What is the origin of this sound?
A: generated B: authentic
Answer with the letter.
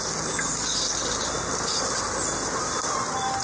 B